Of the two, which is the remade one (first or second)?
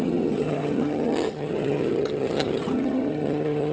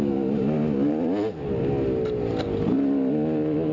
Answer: first